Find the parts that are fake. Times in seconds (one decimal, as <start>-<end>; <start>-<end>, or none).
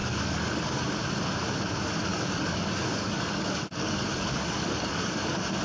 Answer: 0.0-0.8; 2.1-5.6